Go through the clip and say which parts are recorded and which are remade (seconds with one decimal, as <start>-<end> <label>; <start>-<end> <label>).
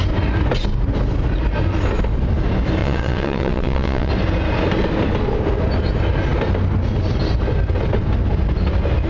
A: 0.0-2.8 recorded; 2.8-4.1 remade; 4.1-9.1 recorded